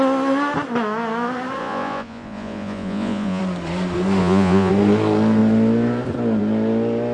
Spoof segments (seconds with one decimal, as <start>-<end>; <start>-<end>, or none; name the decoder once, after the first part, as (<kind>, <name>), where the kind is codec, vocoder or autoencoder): 1.6-3.4 (vocoder, Vocos); 4.2-4.7